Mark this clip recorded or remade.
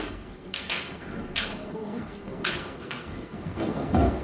remade